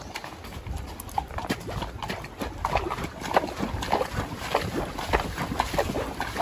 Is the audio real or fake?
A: real